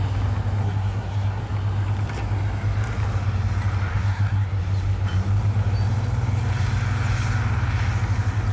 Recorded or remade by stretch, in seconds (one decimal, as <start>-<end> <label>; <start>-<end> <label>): 0.0-0.6 recorded; 0.6-1.4 remade; 1.4-3.9 recorded; 3.9-4.6 remade; 4.6-8.5 recorded